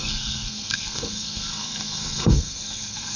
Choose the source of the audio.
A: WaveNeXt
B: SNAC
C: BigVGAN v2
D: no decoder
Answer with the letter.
B